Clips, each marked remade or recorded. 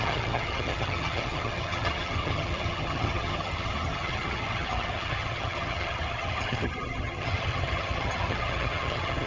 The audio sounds remade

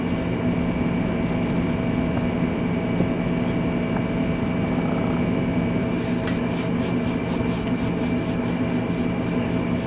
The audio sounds recorded